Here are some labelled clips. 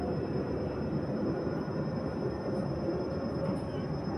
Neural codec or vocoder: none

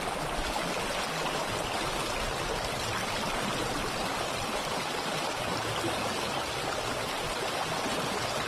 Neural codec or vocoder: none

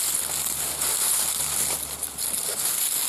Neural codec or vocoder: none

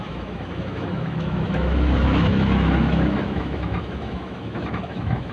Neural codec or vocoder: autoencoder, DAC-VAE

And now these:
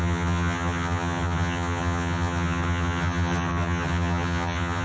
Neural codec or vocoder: vocoder, HiFi-GAN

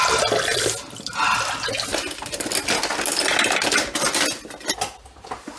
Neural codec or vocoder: none